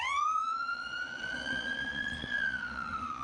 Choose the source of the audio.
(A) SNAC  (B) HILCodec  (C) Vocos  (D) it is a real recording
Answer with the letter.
C